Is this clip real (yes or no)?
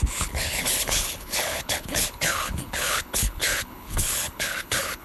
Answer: no